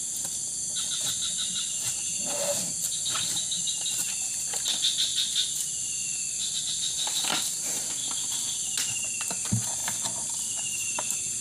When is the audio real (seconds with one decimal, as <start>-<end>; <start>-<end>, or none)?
0.0-1.9; 3.0-5.1; 6.6-8.0; 9.1-11.4